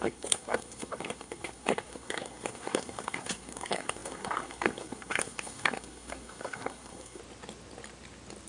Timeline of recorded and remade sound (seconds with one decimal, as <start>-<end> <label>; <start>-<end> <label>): 0.0-7.2 remade; 7.2-8.5 recorded